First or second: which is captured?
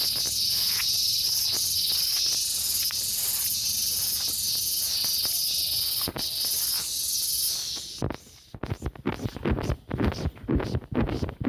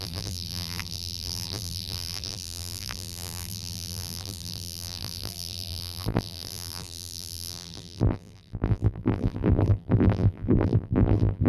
first